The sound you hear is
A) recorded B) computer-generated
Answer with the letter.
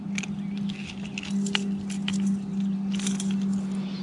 A